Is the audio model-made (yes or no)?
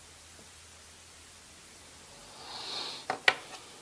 no